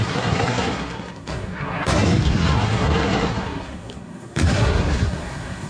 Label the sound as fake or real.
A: fake